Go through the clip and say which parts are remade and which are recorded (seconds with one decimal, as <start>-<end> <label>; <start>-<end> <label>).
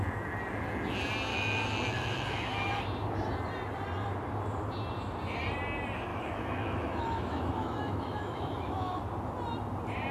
0.0-1.3 recorded; 1.3-2.8 remade; 2.8-6.1 recorded; 6.1-9.0 remade; 9.0-10.1 recorded